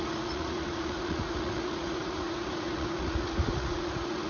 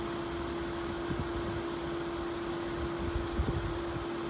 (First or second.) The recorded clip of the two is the second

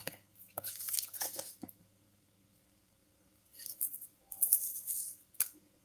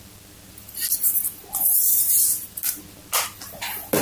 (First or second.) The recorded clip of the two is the second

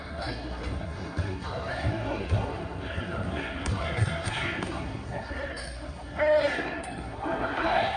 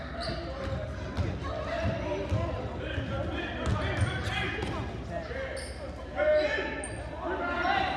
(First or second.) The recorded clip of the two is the second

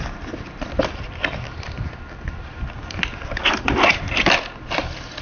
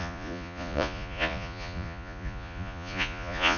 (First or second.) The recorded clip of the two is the first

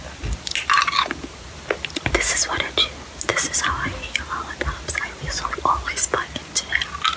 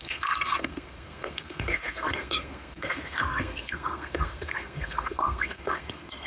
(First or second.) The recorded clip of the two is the first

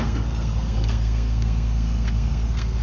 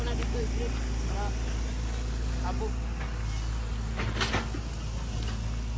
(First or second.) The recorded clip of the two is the second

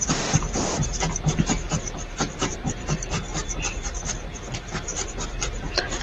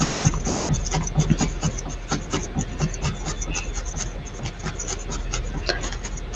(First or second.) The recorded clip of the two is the second